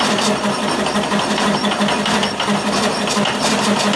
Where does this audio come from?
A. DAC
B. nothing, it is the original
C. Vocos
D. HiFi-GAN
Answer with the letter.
B